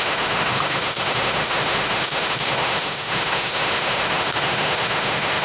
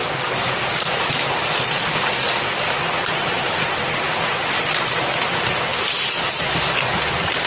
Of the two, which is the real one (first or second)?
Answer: second